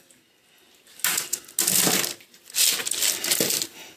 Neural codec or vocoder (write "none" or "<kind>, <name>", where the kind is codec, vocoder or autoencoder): none